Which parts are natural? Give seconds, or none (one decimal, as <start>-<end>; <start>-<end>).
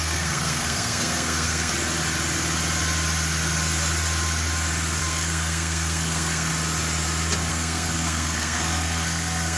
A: 1.7-5.0; 6.5-7.5